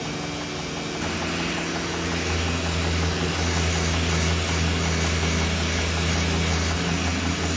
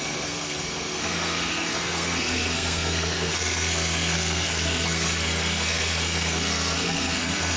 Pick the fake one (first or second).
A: second